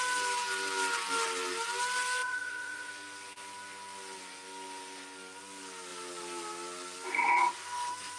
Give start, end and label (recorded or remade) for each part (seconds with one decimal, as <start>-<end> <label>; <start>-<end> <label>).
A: 0.0-2.2 recorded; 2.2-2.9 remade; 2.9-8.2 recorded